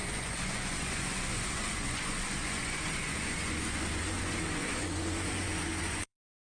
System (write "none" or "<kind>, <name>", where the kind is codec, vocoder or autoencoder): vocoder, Vocos